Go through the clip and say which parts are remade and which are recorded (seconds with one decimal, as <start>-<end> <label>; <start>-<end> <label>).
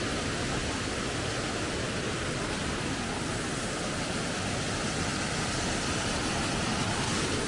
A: 0.0-0.6 recorded; 0.6-1.3 remade; 1.3-5.1 recorded; 5.1-6.1 remade; 6.1-7.5 recorded